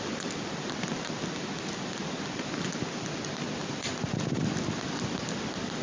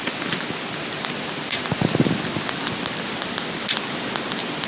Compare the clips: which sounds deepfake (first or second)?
first